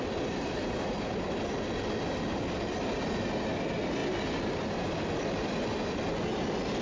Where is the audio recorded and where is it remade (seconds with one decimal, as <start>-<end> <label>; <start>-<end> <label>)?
0.0-6.8 recorded